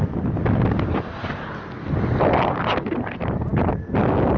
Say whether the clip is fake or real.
real